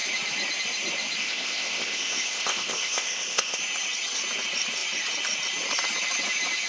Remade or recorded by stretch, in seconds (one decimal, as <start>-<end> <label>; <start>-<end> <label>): 0.0-1.2 recorded; 1.2-3.6 remade; 3.6-6.7 recorded